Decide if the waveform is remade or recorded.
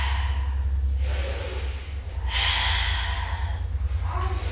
recorded